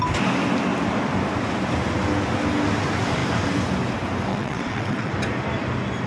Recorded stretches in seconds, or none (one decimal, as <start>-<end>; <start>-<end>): 0.0-4.3; 5.1-6.1